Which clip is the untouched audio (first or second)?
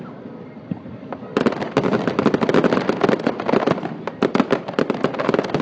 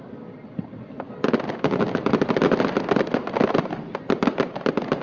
second